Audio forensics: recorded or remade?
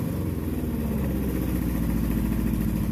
recorded